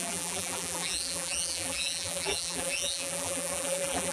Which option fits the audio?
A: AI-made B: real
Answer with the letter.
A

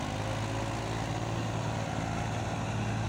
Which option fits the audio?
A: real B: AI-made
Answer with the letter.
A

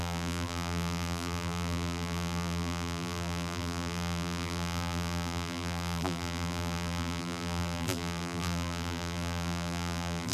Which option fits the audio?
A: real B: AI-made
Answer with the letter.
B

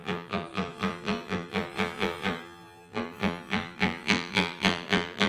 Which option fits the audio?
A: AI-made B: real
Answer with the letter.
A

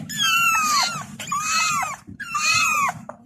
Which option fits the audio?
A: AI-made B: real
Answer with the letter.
A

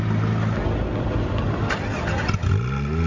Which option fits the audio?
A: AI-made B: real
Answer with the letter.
B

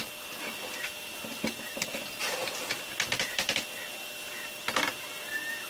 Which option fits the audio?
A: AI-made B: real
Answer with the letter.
B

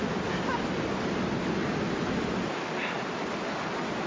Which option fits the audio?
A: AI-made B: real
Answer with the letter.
B